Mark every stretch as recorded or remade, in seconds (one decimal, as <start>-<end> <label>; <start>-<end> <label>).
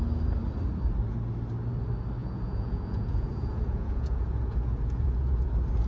0.0-2.2 recorded; 2.2-5.5 remade; 5.5-5.9 recorded